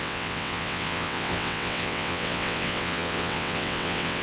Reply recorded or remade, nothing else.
remade